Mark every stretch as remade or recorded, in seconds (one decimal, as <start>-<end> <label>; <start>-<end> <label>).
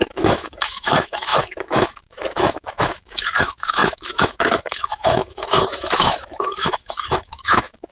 0.0-7.9 remade